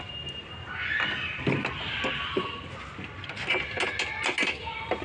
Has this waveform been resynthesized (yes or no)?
no